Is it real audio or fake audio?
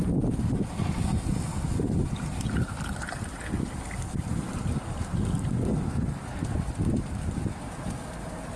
real